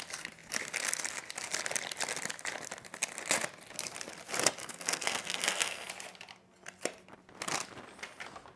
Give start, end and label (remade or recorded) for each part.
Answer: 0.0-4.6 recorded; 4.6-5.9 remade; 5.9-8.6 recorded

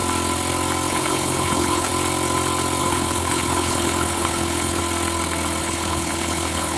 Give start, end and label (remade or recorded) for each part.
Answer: 0.0-0.9 recorded; 0.9-1.9 remade; 1.9-2.8 recorded; 2.8-4.8 remade; 4.8-5.6 recorded; 5.6-6.8 remade

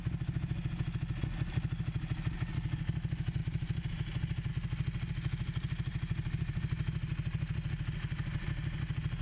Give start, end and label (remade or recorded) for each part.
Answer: 0.0-3.4 recorded; 3.4-4.5 remade; 4.5-5.9 recorded; 5.9-6.6 remade; 6.6-9.2 recorded

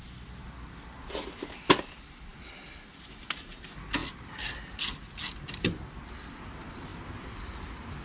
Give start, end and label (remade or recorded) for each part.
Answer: 0.0-8.0 recorded